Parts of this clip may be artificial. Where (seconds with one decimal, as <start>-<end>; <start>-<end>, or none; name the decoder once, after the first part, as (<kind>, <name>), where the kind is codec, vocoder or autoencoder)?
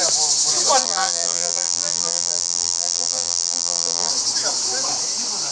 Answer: 0.8-4.1 (vocoder, BigVGAN v2)